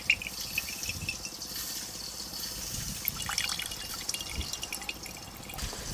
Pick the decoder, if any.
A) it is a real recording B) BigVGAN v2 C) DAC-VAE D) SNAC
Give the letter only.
A